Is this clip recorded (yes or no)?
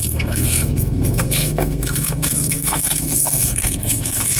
no